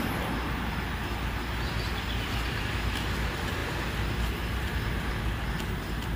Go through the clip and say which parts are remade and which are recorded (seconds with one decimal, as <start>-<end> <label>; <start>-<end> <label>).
0.0-6.2 recorded